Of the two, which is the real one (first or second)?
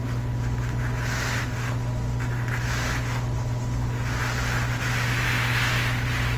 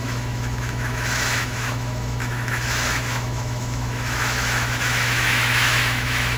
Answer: first